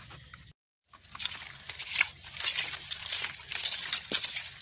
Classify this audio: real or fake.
real